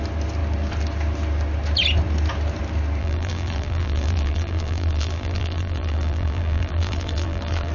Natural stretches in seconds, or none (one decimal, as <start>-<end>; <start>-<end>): 0.0-3.0